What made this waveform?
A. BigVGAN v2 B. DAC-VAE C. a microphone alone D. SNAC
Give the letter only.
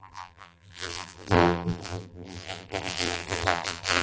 A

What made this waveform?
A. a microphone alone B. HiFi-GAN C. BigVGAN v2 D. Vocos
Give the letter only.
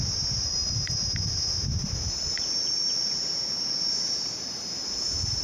C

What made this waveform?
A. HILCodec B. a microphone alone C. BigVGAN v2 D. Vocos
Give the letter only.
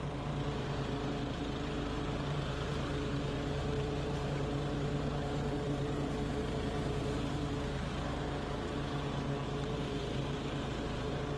C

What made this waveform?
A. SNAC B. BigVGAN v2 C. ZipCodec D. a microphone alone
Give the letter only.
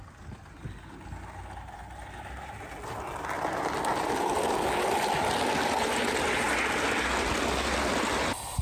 D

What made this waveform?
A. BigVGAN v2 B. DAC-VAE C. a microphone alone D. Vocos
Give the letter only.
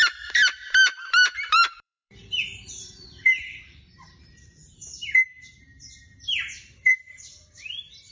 A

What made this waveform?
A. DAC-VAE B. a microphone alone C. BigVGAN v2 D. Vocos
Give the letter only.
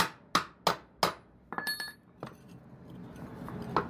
B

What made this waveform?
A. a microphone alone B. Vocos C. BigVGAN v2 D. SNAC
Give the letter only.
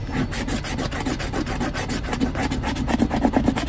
A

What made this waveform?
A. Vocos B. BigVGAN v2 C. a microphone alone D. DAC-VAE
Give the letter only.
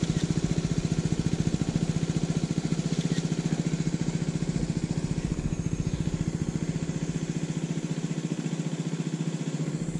C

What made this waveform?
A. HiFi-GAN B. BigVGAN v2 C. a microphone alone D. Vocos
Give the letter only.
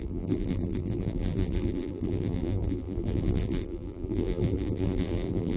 B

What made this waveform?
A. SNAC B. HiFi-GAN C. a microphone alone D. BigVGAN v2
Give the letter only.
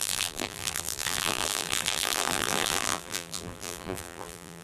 D